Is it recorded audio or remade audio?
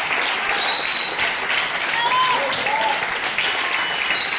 recorded